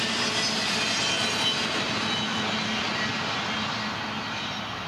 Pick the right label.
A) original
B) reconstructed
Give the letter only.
A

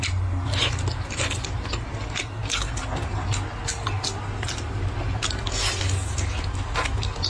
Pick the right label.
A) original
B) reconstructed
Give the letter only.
A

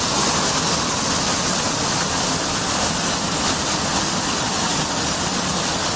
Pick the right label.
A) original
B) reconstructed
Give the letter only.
A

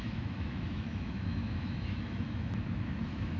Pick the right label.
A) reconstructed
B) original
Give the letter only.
A